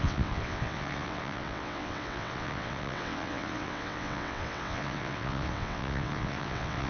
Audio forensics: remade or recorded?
remade